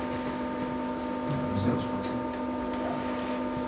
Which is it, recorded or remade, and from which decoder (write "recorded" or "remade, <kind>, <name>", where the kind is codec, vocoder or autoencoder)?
recorded